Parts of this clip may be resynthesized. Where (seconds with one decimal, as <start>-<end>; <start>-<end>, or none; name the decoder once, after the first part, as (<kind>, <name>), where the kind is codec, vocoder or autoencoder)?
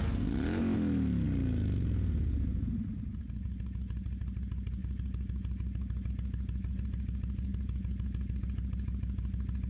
none